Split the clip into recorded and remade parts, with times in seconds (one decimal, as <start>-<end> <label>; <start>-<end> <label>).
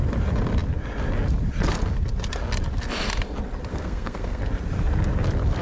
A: 0.0-3.7 recorded; 3.7-4.4 remade; 4.4-5.6 recorded